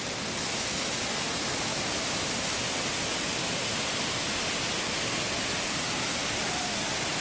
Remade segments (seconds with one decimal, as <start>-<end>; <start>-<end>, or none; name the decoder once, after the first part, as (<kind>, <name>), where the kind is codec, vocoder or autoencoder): 1.7-2.9 (vocoder, BigVGAN v2); 3.3-4.2